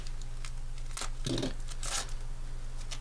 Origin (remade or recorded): recorded